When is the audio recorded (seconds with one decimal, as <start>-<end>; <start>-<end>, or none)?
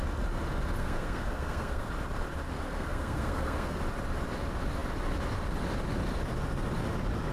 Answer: 0.0-0.8; 1.9-2.5; 3.8-7.3